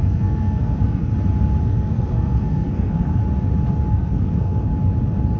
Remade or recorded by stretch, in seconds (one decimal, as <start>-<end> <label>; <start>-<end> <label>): 0.0-1.1 remade; 1.1-1.6 recorded; 1.6-3.2 remade; 3.2-3.9 recorded; 3.9-4.7 remade; 4.7-5.4 recorded